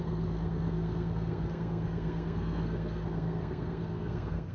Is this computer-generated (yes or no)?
yes